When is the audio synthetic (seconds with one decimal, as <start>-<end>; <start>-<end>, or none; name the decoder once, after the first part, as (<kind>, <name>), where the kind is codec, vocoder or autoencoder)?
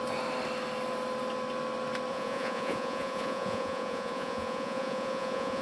2.1-5.6 (vocoder, Vocos)